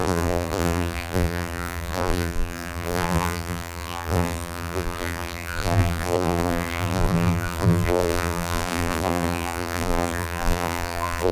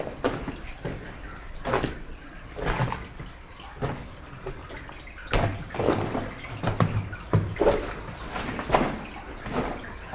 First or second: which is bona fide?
second